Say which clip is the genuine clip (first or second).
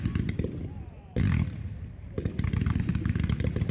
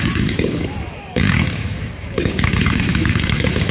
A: first